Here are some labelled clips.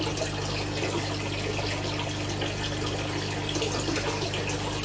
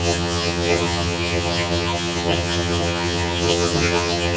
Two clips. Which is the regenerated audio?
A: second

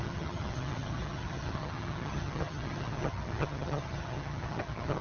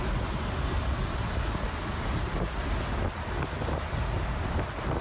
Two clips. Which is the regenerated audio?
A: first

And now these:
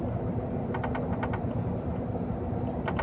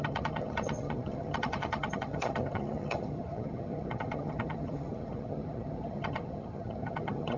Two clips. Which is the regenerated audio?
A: second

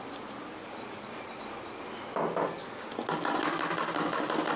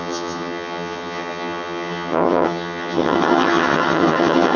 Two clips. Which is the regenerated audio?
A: second